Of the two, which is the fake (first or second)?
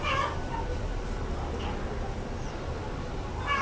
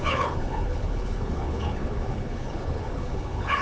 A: second